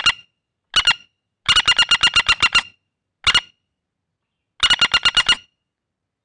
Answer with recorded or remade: recorded